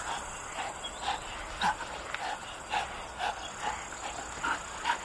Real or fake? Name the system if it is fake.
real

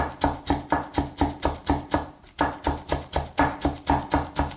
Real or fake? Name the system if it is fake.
real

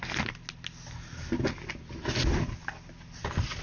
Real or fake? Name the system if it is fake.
real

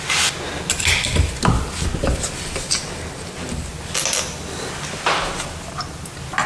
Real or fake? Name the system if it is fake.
real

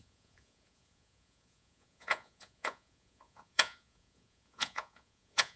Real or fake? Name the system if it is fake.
fake, vocoder, Vocos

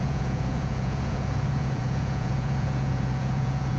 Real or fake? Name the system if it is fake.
fake, vocoder, Vocos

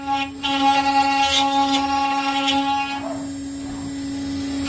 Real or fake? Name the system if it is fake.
real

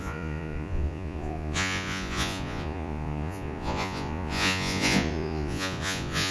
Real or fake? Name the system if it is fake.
fake, vocoder, Vocos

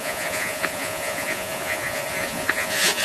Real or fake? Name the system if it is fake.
fake, vocoder, Vocos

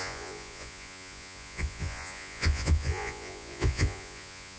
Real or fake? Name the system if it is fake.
fake, vocoder, Vocos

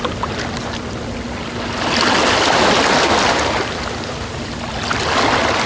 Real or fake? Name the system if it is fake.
real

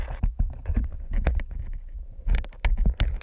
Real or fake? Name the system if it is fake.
real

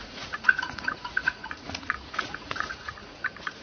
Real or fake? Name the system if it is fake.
fake, vocoder, Vocos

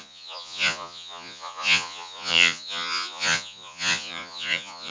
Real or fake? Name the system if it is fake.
fake, vocoder, Vocos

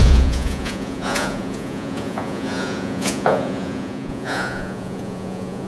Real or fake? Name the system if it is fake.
fake, vocoder, Vocos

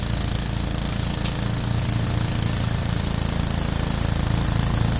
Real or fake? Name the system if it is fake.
real